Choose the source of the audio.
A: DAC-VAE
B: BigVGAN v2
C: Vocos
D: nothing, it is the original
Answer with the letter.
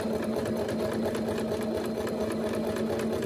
D